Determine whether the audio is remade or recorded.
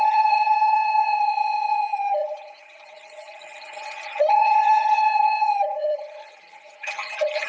remade